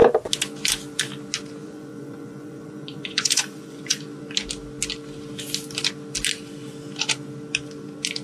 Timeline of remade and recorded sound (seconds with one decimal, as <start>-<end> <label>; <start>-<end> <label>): 0.0-1.6 recorded; 1.6-4.0 remade; 4.0-8.2 recorded